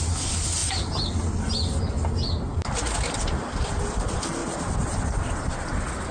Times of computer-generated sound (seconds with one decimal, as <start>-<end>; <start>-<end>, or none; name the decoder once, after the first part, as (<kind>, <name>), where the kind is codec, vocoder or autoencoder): none

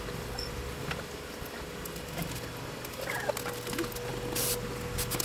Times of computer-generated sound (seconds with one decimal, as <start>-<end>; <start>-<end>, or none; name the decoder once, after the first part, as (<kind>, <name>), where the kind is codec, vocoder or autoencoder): none